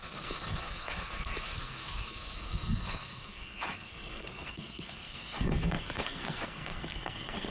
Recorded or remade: remade